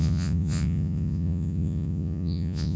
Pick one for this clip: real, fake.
fake